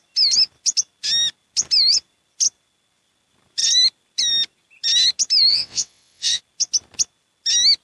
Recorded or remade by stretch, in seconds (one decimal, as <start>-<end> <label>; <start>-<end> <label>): 0.0-5.5 recorded; 5.5-6.4 remade; 6.4-7.8 recorded